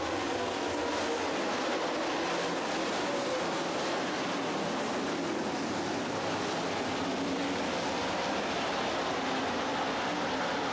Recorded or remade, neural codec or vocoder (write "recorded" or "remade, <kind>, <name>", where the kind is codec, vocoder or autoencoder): recorded